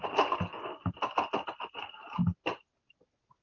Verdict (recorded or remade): recorded